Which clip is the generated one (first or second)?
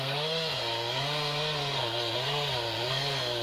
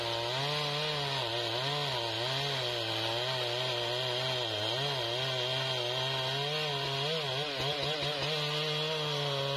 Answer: first